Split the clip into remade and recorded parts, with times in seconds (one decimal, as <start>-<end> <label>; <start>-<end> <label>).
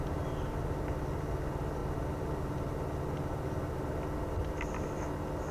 0.0-5.5 recorded